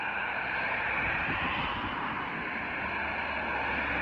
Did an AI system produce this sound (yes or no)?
no